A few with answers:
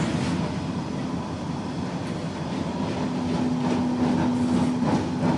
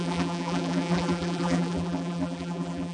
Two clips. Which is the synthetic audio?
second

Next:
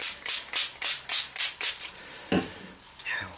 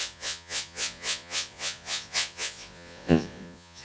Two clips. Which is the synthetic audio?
second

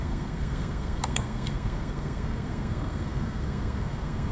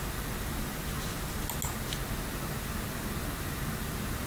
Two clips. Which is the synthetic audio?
first